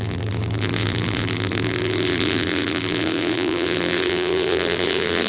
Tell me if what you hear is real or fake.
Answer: fake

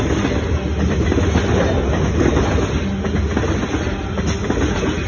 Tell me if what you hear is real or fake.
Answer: real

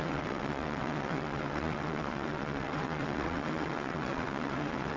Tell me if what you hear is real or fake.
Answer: fake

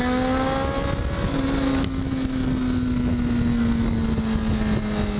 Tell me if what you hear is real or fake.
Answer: real